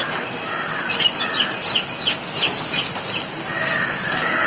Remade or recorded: recorded